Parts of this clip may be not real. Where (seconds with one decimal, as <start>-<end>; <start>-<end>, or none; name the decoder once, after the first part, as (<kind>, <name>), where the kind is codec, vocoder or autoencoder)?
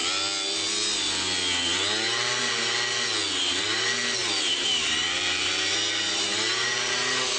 4.2-7.4 (vocoder, BigVGAN v2)